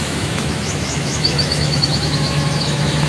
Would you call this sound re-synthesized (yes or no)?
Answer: yes